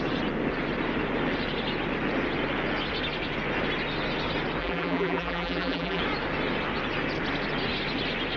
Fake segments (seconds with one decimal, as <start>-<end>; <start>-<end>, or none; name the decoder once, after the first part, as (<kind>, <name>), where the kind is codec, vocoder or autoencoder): 4.6-6.0 (vocoder, BigVGAN v2)